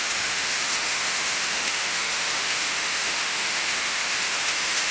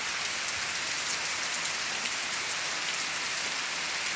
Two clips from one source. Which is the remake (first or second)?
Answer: first